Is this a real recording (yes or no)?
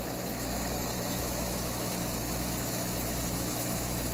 no